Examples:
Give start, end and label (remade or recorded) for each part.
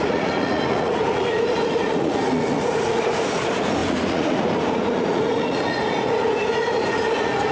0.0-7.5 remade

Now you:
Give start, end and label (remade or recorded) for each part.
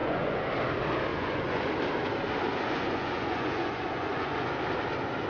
0.0-0.5 remade; 0.5-1.1 recorded; 1.1-1.7 remade; 1.7-2.5 recorded; 2.5-4.5 remade; 4.5-5.3 recorded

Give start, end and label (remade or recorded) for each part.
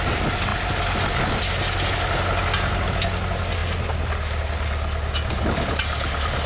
0.0-6.5 recorded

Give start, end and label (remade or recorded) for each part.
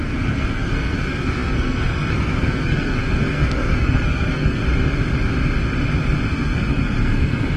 0.0-4.6 remade; 4.6-6.3 recorded; 6.3-7.6 remade